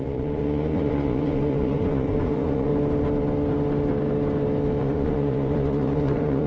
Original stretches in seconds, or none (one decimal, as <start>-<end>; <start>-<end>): 2.7-4.8